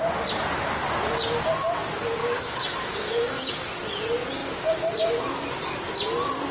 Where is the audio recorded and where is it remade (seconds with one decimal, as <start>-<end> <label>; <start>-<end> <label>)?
0.0-2.2 recorded; 2.2-3.7 remade; 3.7-6.5 recorded